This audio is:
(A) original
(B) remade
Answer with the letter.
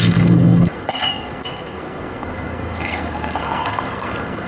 B